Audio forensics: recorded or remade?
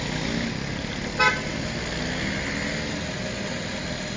recorded